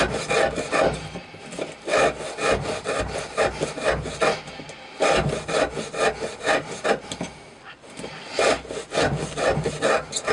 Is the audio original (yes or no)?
yes